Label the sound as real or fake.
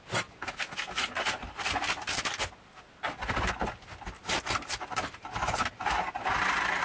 real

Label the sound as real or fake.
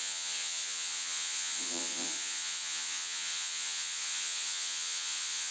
fake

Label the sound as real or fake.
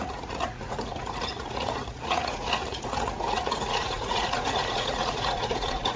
fake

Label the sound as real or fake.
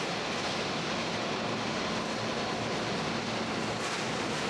real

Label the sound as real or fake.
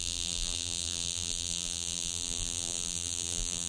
fake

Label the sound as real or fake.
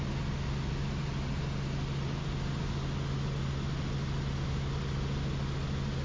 real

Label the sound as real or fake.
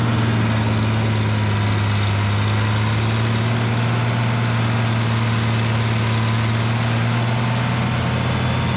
real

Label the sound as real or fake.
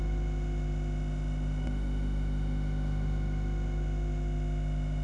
fake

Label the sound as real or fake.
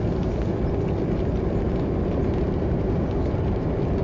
real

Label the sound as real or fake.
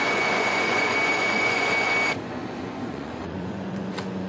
fake